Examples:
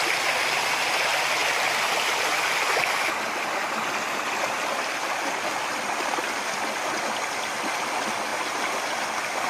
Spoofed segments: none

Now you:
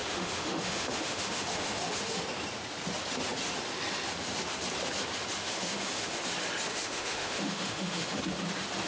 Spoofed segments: 0.0-2.2; 5.4-6.2; 6.7-8.2